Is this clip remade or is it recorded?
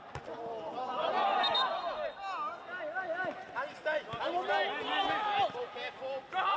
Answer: recorded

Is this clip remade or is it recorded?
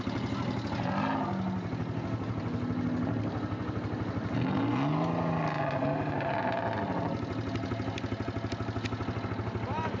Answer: recorded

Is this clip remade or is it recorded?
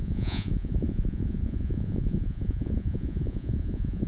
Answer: remade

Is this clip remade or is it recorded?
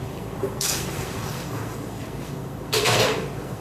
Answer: remade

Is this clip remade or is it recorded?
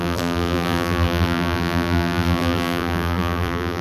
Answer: remade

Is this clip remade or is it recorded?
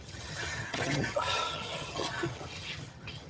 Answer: remade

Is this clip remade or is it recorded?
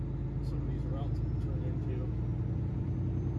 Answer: recorded